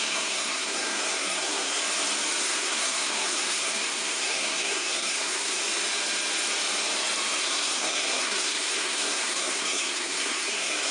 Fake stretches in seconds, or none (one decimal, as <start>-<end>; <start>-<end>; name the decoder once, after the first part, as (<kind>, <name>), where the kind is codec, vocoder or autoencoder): 0.0-1.8 (codec, SNAC); 2.4-5.6; 7.4-10.9